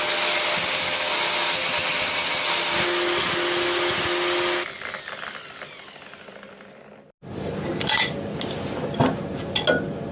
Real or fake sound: real